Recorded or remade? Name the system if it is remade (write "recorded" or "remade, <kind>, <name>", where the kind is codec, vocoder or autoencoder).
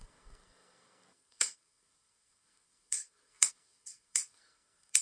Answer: remade, codec, SNAC